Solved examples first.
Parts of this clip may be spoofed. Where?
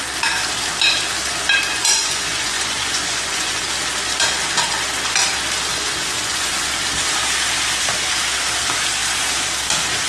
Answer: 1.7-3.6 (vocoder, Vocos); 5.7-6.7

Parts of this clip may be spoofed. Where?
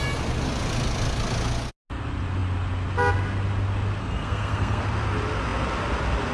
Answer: 4.0-4.8 (codec, SNAC)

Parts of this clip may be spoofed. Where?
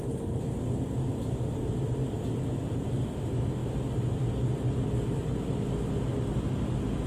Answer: none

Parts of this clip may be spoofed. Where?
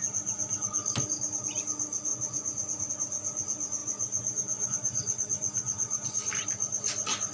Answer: 2.1-2.9 (vocoder, Vocos); 3.8-6.3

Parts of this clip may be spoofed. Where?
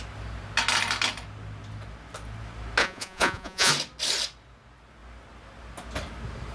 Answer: 2.8-3.7 (vocoder, Vocos)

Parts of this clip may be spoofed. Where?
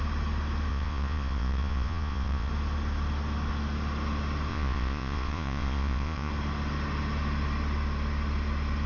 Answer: 0.7-2.5 (vocoder, Vocos); 4.5-6.3